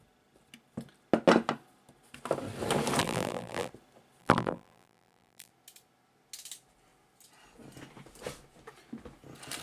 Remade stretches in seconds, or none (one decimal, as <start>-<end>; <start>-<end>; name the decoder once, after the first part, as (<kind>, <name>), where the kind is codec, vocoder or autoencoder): 3.0-3.7 (vocoder, BigVGAN v2); 4.2-5.5